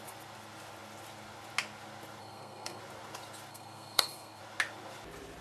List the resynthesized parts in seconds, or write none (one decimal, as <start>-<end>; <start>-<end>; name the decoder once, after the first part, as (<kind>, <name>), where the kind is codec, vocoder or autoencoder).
2.2-2.8 (codec, SNAC); 3.5-4.4